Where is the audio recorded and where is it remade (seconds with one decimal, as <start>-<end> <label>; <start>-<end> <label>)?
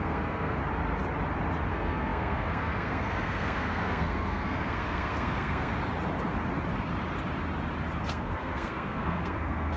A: 0.0-0.6 remade; 0.6-1.7 recorded; 1.7-5.7 remade; 5.7-8.0 recorded; 8.0-9.8 remade